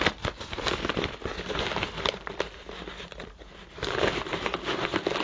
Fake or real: real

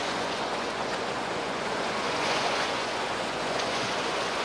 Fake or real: fake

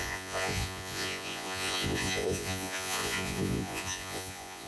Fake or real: fake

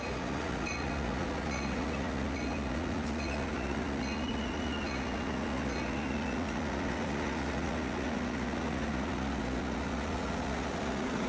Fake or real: fake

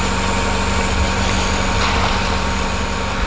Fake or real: real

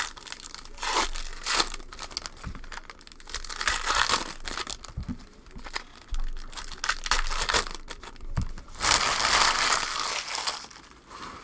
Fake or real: real